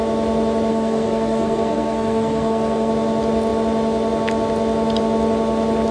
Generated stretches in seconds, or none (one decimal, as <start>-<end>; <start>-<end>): 0.7-2.9